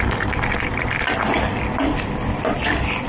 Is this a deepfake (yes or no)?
no